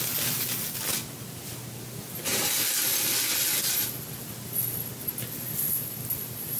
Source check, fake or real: real